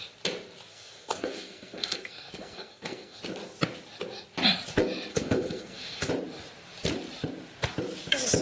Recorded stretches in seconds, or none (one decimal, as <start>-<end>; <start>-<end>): 0.0-0.7; 3.2-5.1; 6.1-8.4

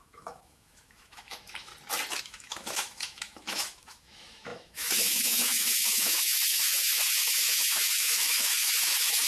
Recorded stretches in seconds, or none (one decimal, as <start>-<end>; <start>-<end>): 1.7-2.2